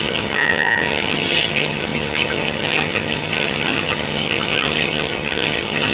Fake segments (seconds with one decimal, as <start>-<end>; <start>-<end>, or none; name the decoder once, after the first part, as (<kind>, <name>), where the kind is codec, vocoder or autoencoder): 0.0-5.9 (vocoder, HiFi-GAN)